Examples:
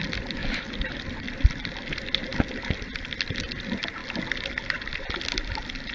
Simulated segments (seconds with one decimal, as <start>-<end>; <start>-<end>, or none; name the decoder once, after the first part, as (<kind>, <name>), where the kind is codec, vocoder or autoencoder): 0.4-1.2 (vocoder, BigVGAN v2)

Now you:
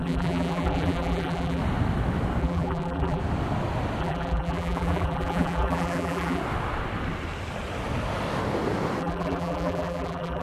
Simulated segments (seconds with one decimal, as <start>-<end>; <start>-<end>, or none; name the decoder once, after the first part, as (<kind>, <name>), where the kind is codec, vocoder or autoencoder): 0.0-1.6 (vocoder, BigVGAN v2); 2.4-3.2; 4.0-6.4; 9.0-10.4

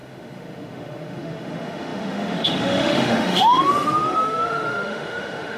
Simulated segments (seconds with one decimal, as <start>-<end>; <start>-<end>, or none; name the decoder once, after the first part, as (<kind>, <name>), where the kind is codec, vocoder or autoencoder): 0.0-5.6 (autoencoder, DAC-VAE)

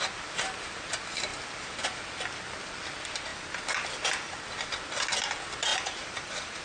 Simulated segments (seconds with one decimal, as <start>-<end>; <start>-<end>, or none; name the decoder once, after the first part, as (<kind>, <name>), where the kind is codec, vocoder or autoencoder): 5.7-6.6 (vocoder, BigVGAN v2)

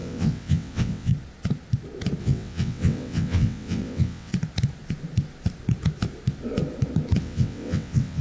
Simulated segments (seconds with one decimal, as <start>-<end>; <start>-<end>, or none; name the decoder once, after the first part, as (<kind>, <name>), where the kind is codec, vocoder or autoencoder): 0.0-1.1 (vocoder, WaveNeXt); 2.2-4.3; 7.2-8.2

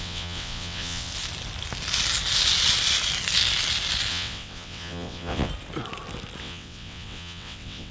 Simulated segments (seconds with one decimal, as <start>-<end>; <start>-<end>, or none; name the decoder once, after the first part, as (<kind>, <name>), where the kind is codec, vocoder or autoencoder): 0.0-1.1 (vocoder, WaveNeXt); 4.1-5.5; 6.4-7.9